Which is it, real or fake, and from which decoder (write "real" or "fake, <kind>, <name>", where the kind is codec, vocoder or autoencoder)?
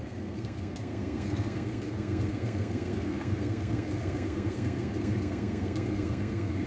fake, codec, SNAC